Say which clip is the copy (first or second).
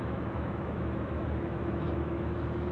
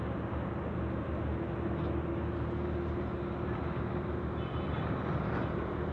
first